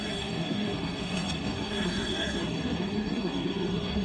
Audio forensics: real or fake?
fake